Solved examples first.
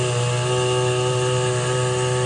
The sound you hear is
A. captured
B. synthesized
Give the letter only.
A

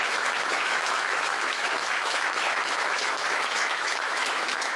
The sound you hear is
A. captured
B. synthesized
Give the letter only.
B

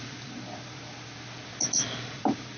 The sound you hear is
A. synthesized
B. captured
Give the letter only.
A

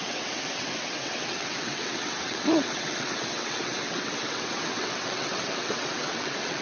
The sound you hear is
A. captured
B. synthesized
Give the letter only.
B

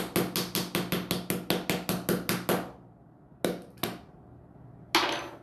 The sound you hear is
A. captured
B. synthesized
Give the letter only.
A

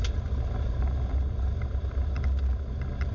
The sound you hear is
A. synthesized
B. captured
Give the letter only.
B